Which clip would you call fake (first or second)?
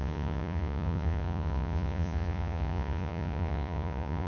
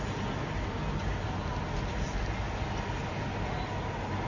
first